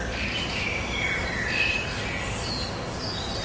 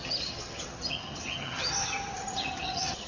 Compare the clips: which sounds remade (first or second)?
second